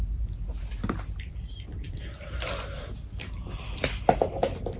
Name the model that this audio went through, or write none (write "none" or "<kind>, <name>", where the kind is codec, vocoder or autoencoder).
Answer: none